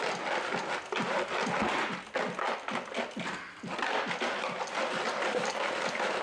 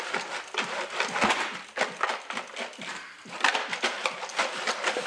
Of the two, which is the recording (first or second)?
first